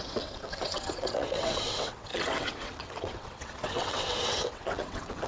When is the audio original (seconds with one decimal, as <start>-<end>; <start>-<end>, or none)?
none